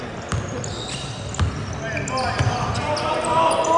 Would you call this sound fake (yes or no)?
no